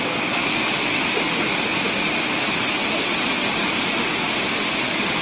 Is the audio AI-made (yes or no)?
no